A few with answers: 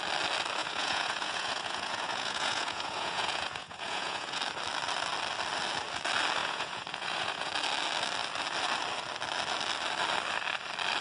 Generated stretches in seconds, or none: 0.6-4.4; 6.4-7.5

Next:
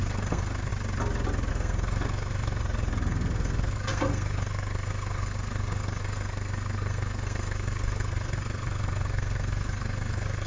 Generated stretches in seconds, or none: 0.0-0.7; 1.5-10.5